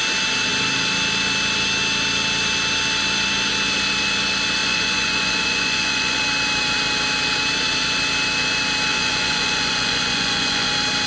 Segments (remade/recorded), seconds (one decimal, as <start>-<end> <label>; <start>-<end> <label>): 0.0-4.6 recorded; 4.6-6.2 remade; 6.2-8.9 recorded; 8.9-10.7 remade; 10.7-11.1 recorded